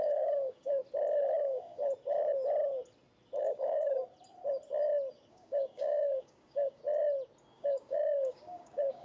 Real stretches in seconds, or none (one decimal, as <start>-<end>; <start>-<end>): 0.8-1.4; 1.8-3.4; 4.0-5.3; 6.8-7.5